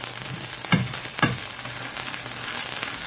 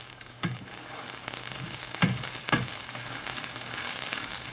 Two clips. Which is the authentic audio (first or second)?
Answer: first